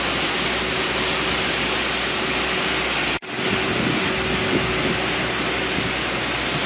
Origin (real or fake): real